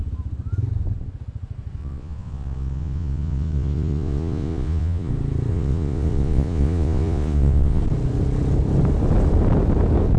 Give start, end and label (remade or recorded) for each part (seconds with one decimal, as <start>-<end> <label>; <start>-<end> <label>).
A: 0.0-1.8 recorded; 1.8-5.1 remade; 5.1-5.5 recorded; 5.5-7.8 remade; 7.8-10.2 recorded